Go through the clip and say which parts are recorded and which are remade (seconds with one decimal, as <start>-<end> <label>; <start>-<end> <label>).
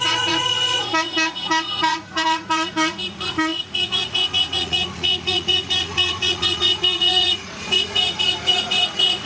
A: 0.0-9.3 remade